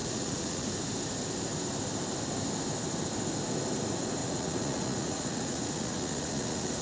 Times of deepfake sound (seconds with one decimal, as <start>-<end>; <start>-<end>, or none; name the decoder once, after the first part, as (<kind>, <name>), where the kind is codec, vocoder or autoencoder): 0.0-0.7 (vocoder, Vocos); 4.2-6.8